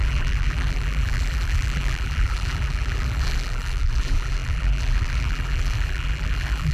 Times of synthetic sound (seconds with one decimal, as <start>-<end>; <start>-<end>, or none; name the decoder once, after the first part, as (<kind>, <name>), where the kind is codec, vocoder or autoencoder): 0.0-6.7 (vocoder, BigVGAN v2)